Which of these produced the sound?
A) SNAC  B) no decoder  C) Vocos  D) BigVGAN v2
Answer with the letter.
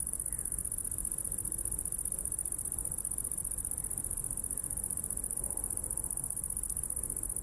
D